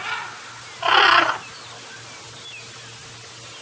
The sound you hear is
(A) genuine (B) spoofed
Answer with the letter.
A